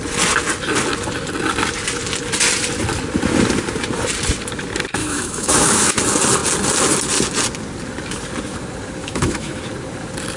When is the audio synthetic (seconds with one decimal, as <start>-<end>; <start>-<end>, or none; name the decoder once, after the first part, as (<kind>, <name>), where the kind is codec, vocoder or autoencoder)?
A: 5.0-6.0 (autoencoder, DAC-VAE); 9.0-9.6